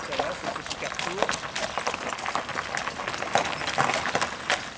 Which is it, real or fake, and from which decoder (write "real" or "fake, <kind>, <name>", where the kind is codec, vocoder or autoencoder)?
real